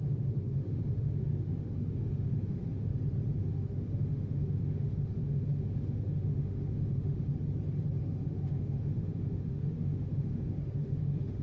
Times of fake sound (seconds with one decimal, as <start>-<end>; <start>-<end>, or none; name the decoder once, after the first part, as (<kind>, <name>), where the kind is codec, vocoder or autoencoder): 0.0-2.9 (autoencoder, DAC-VAE); 3.4-7.3; 8.0-11.4